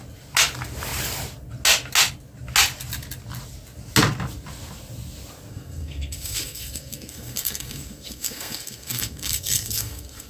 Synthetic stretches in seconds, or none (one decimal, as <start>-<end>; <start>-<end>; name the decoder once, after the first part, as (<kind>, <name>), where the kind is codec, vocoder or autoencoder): 5.5-10.3 (codec, SNAC)